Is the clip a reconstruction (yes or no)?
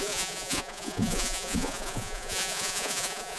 yes